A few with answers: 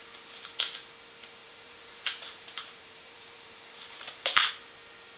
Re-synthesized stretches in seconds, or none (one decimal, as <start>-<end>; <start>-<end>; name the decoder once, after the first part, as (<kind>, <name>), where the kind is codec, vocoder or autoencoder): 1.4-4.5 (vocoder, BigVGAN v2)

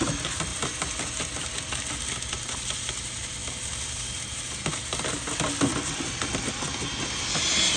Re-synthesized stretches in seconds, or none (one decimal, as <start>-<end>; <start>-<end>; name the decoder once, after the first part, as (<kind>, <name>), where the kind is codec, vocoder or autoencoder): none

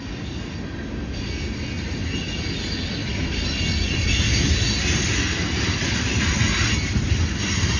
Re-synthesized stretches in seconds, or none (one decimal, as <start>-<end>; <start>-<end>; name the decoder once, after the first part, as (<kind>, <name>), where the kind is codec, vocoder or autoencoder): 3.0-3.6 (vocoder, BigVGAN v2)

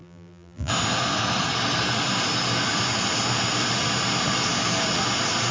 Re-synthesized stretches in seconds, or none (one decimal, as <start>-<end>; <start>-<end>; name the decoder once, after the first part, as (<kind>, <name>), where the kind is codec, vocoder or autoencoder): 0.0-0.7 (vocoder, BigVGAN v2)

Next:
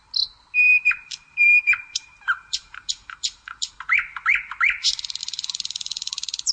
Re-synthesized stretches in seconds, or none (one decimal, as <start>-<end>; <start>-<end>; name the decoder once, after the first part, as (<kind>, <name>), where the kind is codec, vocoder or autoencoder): 0.7-3.7 (vocoder, BigVGAN v2); 5.2-6.5

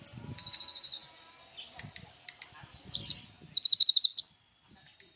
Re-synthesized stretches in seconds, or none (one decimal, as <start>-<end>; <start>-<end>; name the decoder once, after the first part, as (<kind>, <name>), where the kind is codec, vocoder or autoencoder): none

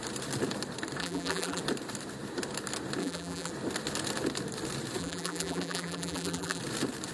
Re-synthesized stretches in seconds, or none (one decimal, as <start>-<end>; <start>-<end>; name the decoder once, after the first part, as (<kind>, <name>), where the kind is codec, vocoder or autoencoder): 1.0-1.6 (vocoder, BigVGAN v2); 3.0-3.5; 5.0-6.6

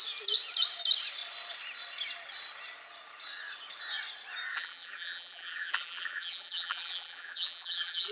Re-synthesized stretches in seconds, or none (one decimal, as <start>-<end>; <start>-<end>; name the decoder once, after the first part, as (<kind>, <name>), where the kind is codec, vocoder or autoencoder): 4.5-8.1 (vocoder, BigVGAN v2)